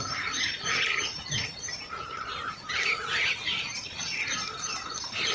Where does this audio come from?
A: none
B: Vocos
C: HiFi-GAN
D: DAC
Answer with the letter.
A